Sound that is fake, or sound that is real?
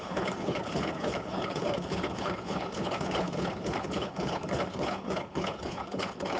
fake